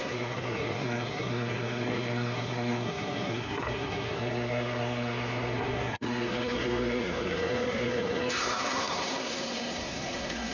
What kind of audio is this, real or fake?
fake